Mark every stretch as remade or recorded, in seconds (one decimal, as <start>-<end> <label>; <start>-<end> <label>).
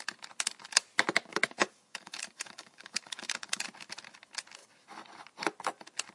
0.0-1.3 recorded; 1.3-3.6 remade; 3.6-6.1 recorded